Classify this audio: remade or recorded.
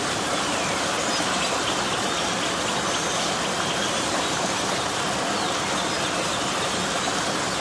recorded